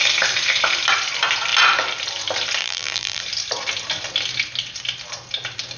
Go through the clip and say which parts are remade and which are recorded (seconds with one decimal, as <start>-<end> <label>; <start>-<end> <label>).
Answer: 0.0-2.6 recorded; 2.6-3.2 remade; 3.2-5.8 recorded